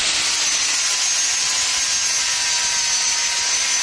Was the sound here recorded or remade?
recorded